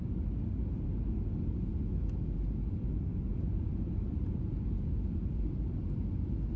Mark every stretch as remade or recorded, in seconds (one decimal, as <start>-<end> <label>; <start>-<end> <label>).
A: 0.0-6.6 recorded